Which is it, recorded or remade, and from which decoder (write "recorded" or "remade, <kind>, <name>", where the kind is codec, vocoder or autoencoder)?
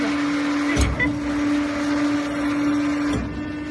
recorded